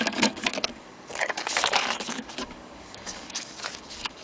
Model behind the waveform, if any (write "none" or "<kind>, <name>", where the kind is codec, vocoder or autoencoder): codec, DAC